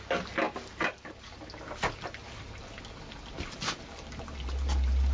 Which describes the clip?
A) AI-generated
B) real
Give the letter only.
B